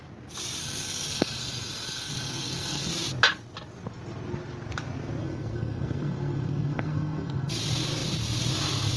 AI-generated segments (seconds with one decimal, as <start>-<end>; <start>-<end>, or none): 0.6-2.9; 5.2-7.5